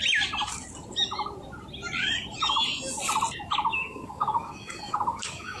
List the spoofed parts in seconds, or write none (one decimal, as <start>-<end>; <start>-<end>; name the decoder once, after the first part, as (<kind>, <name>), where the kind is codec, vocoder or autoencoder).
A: 3.7-5.6 (codec, DAC)